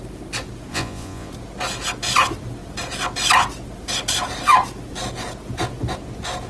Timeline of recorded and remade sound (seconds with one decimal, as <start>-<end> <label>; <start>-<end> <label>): 0.0-0.7 recorded; 0.7-1.3 remade; 1.3-6.5 recorded